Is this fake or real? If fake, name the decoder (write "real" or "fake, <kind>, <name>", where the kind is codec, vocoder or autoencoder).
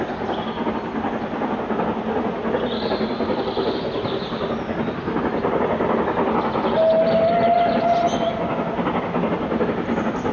real